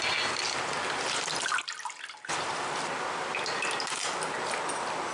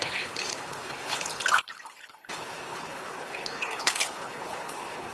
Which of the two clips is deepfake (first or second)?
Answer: second